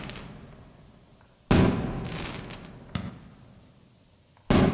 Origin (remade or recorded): recorded